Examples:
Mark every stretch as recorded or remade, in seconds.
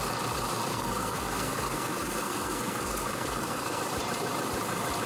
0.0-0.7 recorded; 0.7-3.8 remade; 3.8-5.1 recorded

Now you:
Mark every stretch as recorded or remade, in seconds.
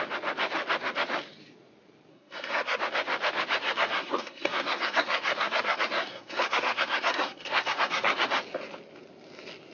0.0-2.1 recorded; 2.1-2.8 remade; 2.8-3.6 recorded; 3.6-8.3 remade; 8.3-9.7 recorded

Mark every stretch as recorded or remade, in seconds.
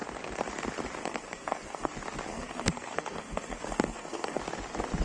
0.0-1.0 recorded; 1.0-1.9 remade; 1.9-2.3 recorded; 2.3-4.4 remade; 4.4-5.0 recorded